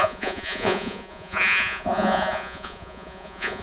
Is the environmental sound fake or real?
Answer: fake